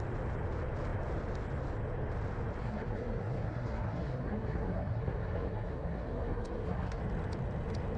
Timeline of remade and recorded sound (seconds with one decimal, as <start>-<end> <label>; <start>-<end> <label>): 0.0-2.6 recorded; 2.6-7.0 remade; 7.0-8.0 recorded